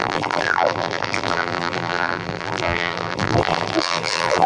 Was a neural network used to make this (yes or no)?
yes